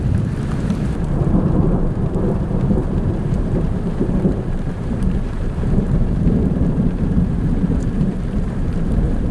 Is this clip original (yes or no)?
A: no